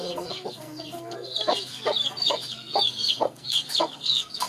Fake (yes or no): yes